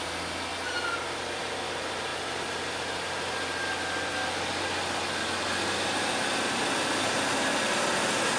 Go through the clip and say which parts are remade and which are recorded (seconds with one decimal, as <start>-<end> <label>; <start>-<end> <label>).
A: 0.0-8.4 recorded

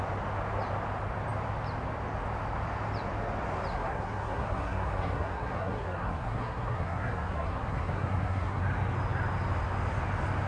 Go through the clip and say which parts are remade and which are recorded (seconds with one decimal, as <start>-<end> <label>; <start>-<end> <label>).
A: 0.0-3.7 recorded; 3.7-8.6 remade; 8.6-10.5 recorded